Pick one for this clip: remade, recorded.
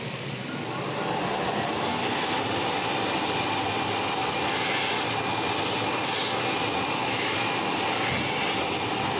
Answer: recorded